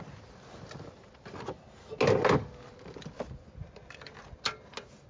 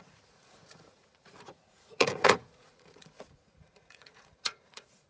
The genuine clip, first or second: first